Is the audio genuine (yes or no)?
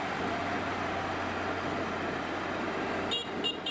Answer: yes